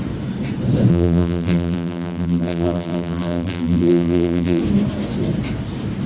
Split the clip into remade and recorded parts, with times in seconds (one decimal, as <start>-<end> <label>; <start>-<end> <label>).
0.0-0.9 recorded; 0.9-4.6 remade; 4.6-6.1 recorded